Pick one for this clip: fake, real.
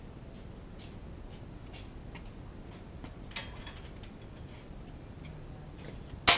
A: real